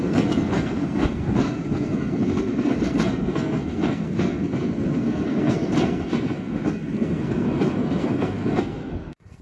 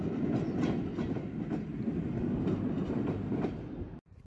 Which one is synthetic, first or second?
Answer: first